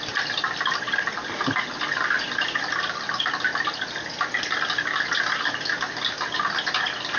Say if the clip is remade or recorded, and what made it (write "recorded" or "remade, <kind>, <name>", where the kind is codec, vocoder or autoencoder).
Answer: recorded